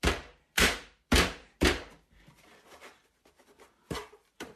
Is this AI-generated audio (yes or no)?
yes